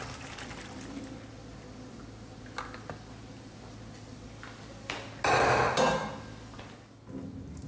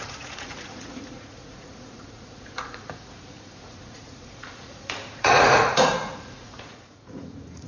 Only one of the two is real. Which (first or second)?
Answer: first